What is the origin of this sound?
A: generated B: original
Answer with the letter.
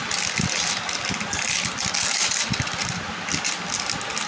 B